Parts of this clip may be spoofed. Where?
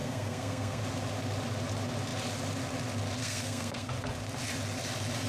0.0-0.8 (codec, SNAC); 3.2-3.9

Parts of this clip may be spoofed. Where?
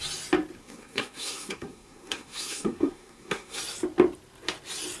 0.6-3.6 (codec, SNAC)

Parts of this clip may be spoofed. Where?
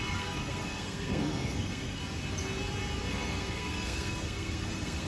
0.0-2.0 (codec, SNAC); 3.1-5.1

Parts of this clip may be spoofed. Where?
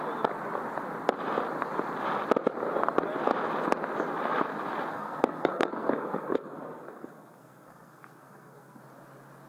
4.9-8.8 (codec, SNAC)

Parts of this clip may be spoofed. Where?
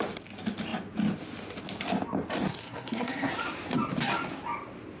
2.5-3.3 (codec, SNAC)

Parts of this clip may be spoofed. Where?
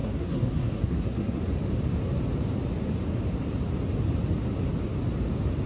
0.0-1.4 (codec, SNAC)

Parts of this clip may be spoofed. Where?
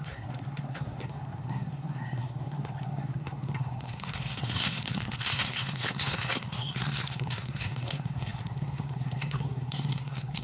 0.0-10.4 (codec, SNAC)